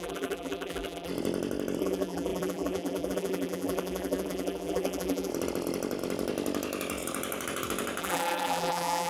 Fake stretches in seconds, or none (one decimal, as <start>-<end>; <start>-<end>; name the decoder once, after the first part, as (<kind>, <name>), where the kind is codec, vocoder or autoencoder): 0.0-1.1 (vocoder, BigVGAN v2); 1.8-5.3; 8.0-9.1